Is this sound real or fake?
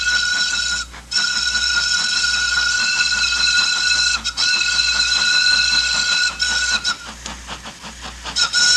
real